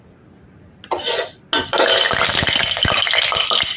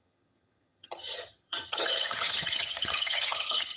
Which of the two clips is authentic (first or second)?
first